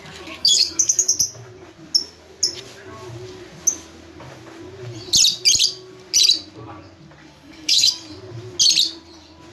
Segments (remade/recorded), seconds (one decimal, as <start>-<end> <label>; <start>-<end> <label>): 0.0-0.4 recorded; 0.4-1.1 remade; 1.1-7.2 recorded; 7.2-7.9 remade; 7.9-9.5 recorded